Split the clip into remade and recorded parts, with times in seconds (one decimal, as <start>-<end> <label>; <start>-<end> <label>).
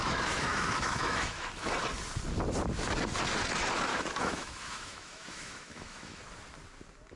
0.0-1.7 remade; 1.7-3.9 recorded; 3.9-6.2 remade; 6.2-7.2 recorded